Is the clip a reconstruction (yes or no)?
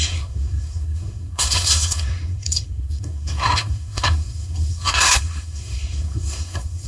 yes